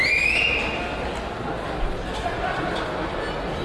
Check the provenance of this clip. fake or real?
real